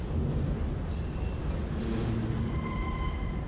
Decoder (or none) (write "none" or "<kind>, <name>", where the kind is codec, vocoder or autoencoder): none